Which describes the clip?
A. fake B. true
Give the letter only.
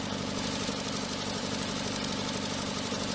B